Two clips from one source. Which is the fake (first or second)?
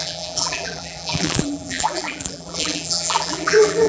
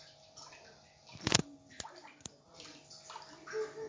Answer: first